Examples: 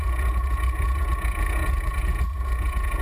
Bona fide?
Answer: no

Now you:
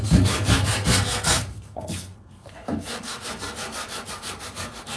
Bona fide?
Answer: no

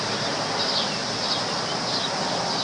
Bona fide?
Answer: yes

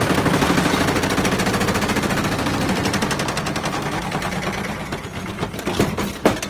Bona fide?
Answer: yes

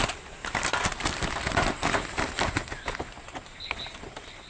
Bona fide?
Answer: yes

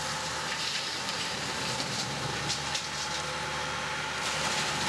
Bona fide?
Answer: yes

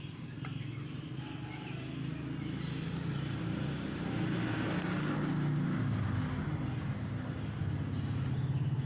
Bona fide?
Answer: yes